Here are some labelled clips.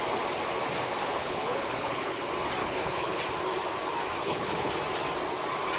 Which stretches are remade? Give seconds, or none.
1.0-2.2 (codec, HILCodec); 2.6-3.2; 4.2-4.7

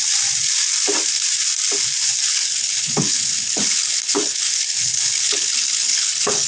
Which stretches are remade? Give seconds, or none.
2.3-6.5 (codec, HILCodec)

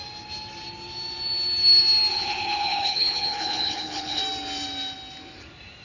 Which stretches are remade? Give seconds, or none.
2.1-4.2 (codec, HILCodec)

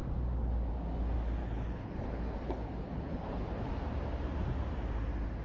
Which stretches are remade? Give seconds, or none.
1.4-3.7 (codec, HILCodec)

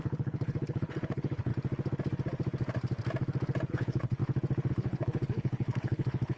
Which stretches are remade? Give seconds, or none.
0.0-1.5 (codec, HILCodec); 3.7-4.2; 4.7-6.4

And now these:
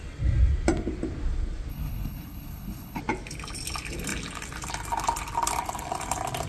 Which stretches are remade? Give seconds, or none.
1.7-3.0 (codec, HILCodec)

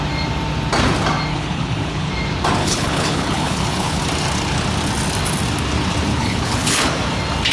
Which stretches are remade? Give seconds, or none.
1.3-2.1 (codec, HILCodec); 2.6-4.0; 6.1-6.9

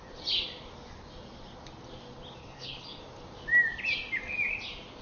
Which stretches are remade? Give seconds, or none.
2.4-3.0 (codec, HILCodec)